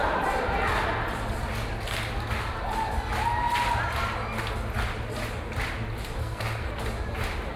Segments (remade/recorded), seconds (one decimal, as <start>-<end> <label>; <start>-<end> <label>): 0.0-6.2 recorded; 6.2-6.7 remade; 6.7-7.6 recorded